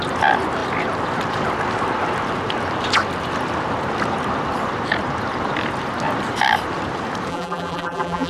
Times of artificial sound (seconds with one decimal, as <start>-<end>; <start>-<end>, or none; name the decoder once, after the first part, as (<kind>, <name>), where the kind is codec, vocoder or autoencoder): 7.3-8.3 (vocoder, BigVGAN v2)